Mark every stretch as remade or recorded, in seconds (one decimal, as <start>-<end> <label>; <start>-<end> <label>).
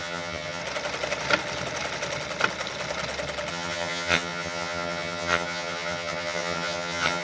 0.0-0.6 remade; 0.6-3.5 recorded; 3.5-7.2 remade